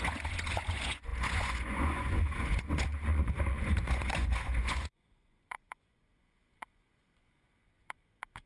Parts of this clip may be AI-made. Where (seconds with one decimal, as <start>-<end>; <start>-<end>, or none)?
0.0-8.5